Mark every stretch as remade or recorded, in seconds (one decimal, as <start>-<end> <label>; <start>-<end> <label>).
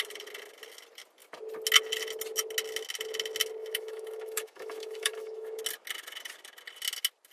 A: 0.0-3.6 recorded; 3.6-5.6 remade; 5.6-7.3 recorded